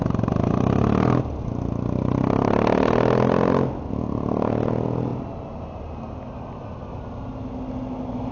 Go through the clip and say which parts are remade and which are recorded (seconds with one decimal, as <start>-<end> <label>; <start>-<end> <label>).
0.0-8.3 recorded

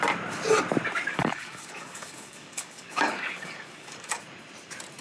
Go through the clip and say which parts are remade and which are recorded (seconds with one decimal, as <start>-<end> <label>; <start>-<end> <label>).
0.0-1.1 recorded; 1.1-4.1 remade; 4.1-5.0 recorded

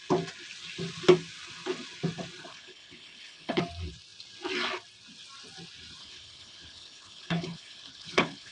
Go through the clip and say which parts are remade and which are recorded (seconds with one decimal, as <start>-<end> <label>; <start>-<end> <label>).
0.0-2.5 recorded; 2.5-3.6 remade; 3.6-6.0 recorded; 6.0-8.5 remade

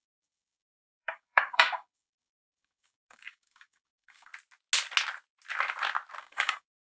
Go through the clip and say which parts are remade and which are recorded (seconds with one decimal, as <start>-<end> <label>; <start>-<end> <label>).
0.0-4.3 remade; 4.3-6.2 recorded; 6.2-6.8 remade

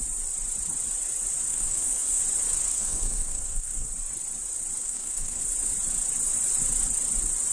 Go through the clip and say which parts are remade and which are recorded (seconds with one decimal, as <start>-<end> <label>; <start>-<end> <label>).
0.0-1.5 recorded; 1.5-2.2 remade; 2.2-2.7 recorded; 2.7-3.9 remade; 3.9-4.8 recorded; 4.8-5.4 remade; 5.4-7.5 recorded